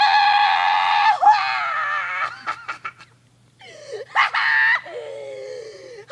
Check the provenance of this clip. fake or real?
real